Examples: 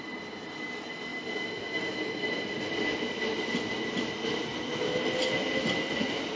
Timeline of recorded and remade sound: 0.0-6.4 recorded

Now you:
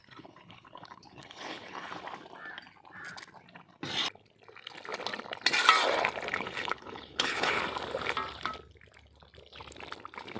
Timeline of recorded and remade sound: 0.0-1.9 remade; 1.9-6.3 recorded; 6.3-7.6 remade; 7.6-10.4 recorded

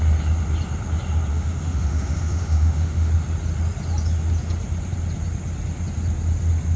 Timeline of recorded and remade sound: 0.0-1.3 recorded; 1.3-3.1 remade; 3.1-6.8 recorded

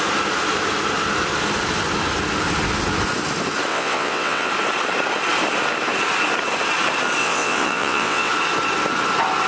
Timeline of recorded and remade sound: 0.0-3.7 recorded; 3.7-4.5 remade; 4.5-7.2 recorded; 7.2-8.3 remade; 8.3-9.5 recorded

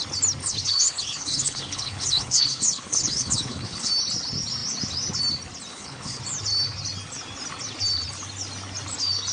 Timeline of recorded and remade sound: 0.0-0.4 recorded; 0.4-3.9 remade; 3.9-5.7 recorded; 5.7-6.2 remade; 6.2-9.3 recorded

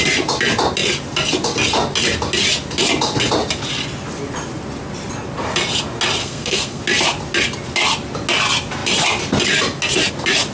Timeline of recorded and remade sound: 0.0-6.2 recorded; 6.2-6.8 remade; 6.8-10.5 recorded

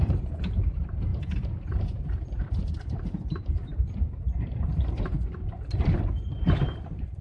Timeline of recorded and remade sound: 0.0-7.2 remade

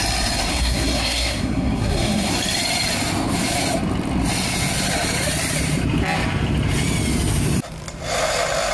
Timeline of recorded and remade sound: 0.0-0.5 recorded; 0.5-2.3 remade; 2.3-8.7 recorded